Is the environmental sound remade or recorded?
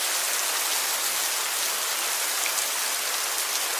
recorded